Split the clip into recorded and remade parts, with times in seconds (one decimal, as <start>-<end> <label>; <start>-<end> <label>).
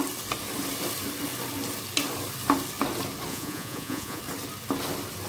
0.0-3.3 recorded; 3.3-4.2 remade; 4.2-5.3 recorded